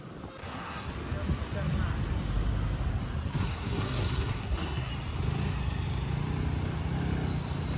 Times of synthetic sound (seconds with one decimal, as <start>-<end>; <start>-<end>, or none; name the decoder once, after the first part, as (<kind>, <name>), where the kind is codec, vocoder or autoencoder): 0.4-0.9 (codec, SNAC); 3.2-4.9

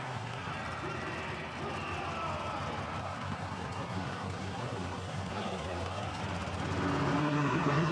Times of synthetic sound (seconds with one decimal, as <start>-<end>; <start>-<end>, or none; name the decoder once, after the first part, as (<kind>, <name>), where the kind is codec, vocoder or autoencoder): 0.0-0.5 (codec, SNAC); 3.0-6.2; 7.2-7.9

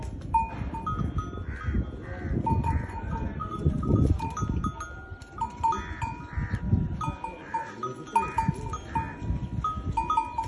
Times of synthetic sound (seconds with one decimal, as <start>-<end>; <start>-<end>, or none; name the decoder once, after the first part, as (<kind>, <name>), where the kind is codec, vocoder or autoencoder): 2.6-4.3 (vocoder, Vocos)

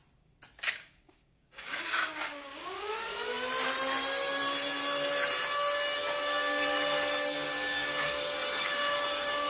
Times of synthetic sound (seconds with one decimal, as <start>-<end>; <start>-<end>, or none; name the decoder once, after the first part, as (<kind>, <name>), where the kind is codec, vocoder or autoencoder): 0.7-3.1 (codec, DAC); 6.0-9.5